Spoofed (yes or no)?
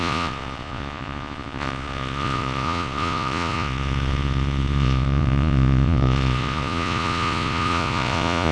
yes